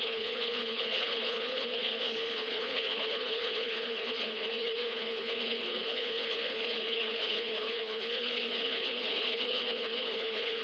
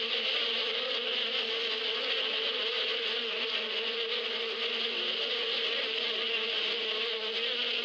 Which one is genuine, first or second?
second